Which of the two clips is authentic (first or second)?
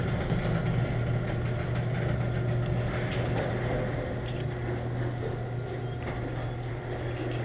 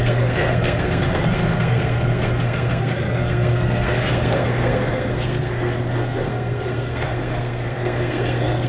first